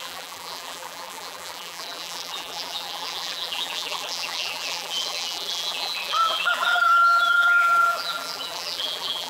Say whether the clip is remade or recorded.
remade